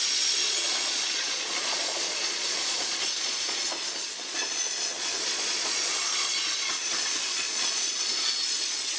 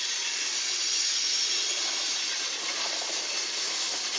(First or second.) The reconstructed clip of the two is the first